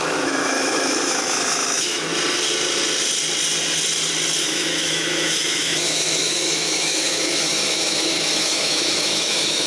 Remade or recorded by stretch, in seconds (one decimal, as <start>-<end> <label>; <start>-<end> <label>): 0.0-2.1 remade; 2.1-4.4 recorded; 4.4-9.7 remade